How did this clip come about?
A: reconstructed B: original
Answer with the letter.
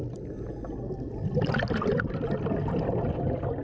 B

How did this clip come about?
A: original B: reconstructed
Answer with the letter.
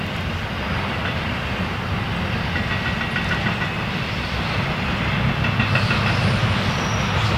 A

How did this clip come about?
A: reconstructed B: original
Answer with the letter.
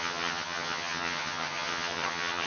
A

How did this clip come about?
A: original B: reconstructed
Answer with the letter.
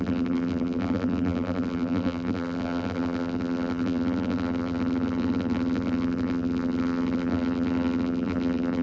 B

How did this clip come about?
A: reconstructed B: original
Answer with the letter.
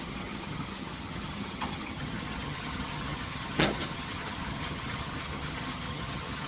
A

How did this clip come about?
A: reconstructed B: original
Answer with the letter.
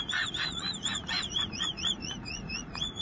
A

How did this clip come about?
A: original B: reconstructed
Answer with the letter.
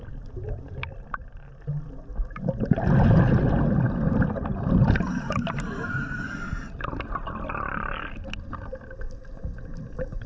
A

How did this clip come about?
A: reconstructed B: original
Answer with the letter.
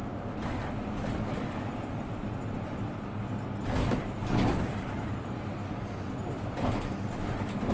B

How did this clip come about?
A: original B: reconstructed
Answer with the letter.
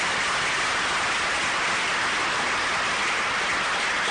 A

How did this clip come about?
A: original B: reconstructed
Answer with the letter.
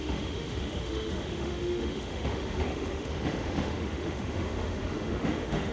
B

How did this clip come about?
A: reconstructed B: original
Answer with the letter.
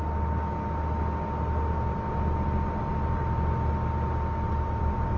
B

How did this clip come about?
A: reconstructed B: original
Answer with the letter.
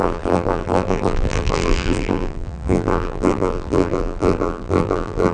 A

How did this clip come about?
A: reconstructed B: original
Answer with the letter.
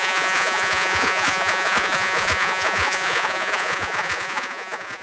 A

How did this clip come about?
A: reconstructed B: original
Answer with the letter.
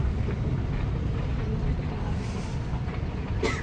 B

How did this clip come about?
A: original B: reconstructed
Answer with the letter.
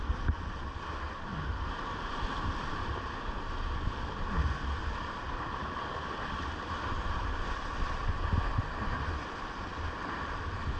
A